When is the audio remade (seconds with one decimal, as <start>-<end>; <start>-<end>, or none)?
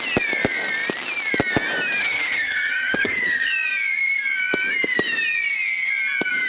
2.0-3.5